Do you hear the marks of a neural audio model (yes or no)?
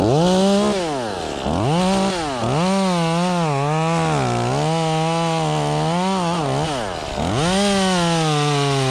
no